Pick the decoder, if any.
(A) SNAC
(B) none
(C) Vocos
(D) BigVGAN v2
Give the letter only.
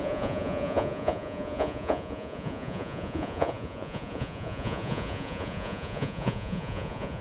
C